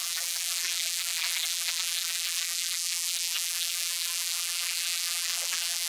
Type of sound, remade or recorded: remade